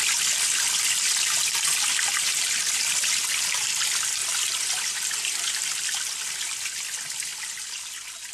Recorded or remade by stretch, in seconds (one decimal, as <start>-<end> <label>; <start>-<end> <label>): 0.0-4.2 recorded; 4.2-5.1 remade; 5.1-8.3 recorded